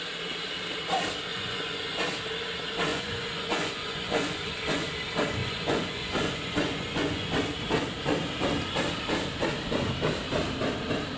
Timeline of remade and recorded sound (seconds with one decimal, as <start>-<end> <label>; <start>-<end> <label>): 0.0-1.3 recorded; 1.3-2.0 remade; 2.0-2.9 recorded; 2.9-4.9 remade; 4.9-5.4 recorded; 5.4-7.3 remade; 7.3-11.2 recorded